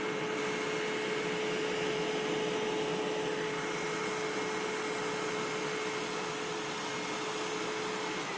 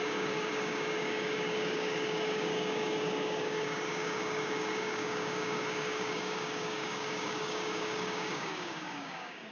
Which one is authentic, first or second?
first